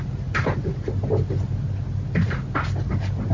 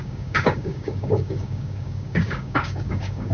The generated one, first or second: second